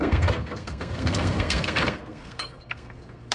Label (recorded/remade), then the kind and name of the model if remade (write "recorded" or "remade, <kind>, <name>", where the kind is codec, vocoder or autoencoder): remade, codec, SNAC